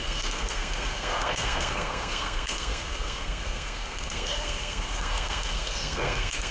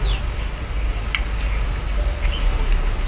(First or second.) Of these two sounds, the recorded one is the second